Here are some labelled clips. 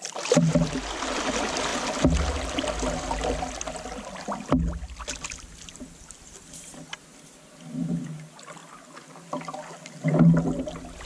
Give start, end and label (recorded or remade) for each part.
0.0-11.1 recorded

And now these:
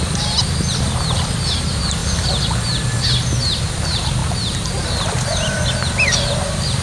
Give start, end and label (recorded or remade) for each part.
0.0-4.2 recorded; 4.2-4.8 remade; 4.8-6.8 recorded

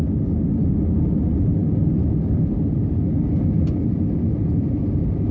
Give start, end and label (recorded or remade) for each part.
0.0-1.6 recorded; 1.6-3.0 remade; 3.0-4.3 recorded; 4.3-5.3 remade

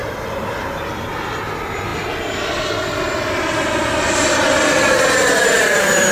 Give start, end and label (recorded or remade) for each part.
0.0-1.1 remade; 1.1-6.1 recorded